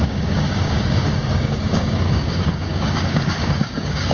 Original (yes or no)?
no